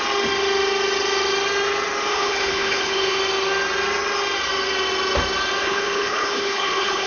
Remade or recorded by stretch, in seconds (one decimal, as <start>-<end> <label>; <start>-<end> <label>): 0.0-2.1 recorded; 2.1-3.2 remade; 3.2-5.6 recorded; 5.6-7.1 remade